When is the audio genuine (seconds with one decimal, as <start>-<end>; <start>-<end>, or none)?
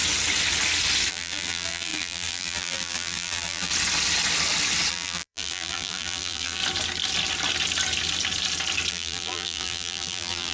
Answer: 0.0-1.1; 3.7-4.9; 6.6-8.9